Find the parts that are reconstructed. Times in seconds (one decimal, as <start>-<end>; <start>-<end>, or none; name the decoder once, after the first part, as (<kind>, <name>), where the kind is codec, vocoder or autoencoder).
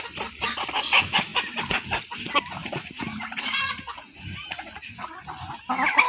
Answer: 2.6-5.2 (vocoder, Vocos)